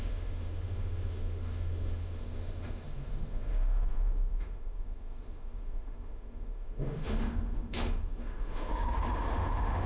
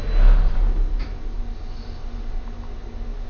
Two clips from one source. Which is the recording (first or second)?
second